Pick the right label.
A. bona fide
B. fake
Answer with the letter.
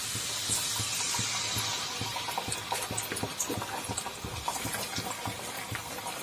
A